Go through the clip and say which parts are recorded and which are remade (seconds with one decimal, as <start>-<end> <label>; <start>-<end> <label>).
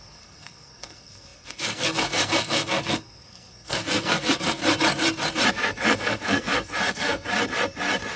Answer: 0.0-4.6 remade; 4.6-5.5 recorded; 5.5-7.3 remade; 7.3-8.2 recorded